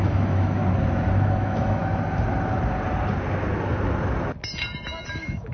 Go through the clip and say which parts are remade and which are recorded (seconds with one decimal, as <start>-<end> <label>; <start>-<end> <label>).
0.0-0.6 remade; 0.6-1.1 recorded; 1.1-1.8 remade; 1.8-5.1 recorded; 5.1-5.5 remade